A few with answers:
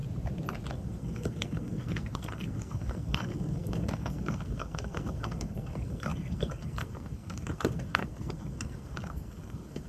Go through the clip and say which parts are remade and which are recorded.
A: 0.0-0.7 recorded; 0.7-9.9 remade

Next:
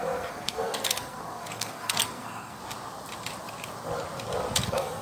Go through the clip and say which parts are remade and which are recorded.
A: 0.0-2.6 remade; 2.6-4.6 recorded; 4.6-5.0 remade

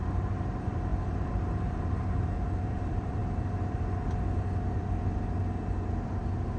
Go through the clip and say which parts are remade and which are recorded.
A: 0.0-3.2 remade; 3.2-6.6 recorded

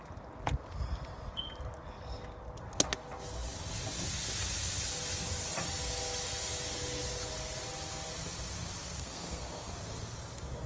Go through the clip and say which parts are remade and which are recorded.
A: 0.0-8.8 recorded; 8.8-9.7 remade; 9.7-10.7 recorded

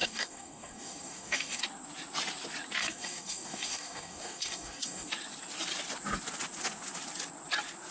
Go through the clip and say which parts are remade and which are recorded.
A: 0.0-1.6 remade; 1.6-2.8 recorded; 2.8-5.1 remade; 5.1-7.9 recorded

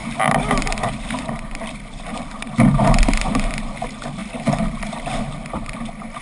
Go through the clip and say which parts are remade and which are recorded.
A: 0.0-3.7 remade; 3.7-4.2 recorded; 4.2-5.2 remade; 5.2-6.2 recorded